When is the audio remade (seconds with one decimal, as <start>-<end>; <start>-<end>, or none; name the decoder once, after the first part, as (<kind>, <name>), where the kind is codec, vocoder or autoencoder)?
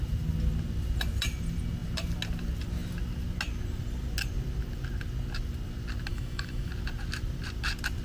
6.1-6.7 (autoencoder, DAC-VAE)